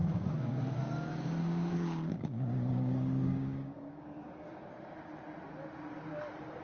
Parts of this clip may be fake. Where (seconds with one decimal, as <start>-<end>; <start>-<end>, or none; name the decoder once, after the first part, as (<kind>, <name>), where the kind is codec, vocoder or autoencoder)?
0.0-0.6 (codec, DAC); 1.1-4.5